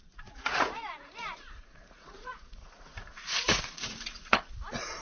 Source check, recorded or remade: remade